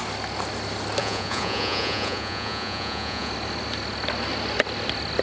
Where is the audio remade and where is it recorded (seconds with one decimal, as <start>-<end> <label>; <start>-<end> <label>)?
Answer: 0.0-1.0 recorded; 1.0-3.3 remade; 3.3-5.2 recorded